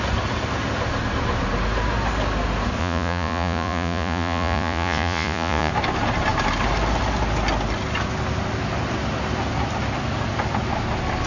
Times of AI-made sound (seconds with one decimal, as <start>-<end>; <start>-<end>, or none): 2.8-5.7